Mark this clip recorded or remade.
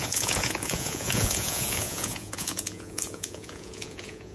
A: remade